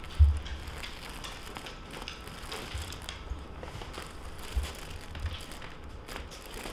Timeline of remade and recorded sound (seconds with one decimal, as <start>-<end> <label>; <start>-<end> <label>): 0.0-6.7 recorded

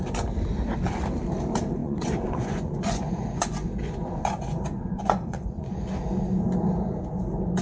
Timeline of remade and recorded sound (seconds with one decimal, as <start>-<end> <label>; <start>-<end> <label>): 0.0-1.8 recorded; 1.8-5.7 remade; 5.7-7.6 recorded

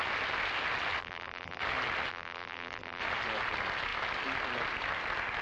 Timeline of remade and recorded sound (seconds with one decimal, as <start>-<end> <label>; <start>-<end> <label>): 0.0-1.0 recorded; 1.0-1.6 remade; 1.6-2.1 recorded; 2.1-3.0 remade; 3.0-5.4 recorded

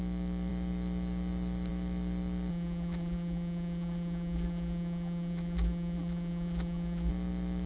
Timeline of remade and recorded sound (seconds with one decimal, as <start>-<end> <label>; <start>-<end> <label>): 0.0-2.5 recorded; 2.5-7.1 remade; 7.1-7.7 recorded